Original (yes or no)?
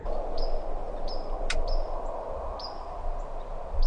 yes